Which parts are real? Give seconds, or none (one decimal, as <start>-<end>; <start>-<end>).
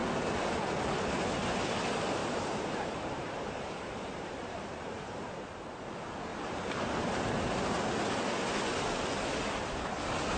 0.0-2.2; 5.7-6.3; 7.7-10.4